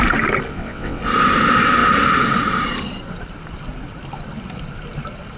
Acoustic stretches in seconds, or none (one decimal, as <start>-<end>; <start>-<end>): 0.0-0.5; 1.0-5.4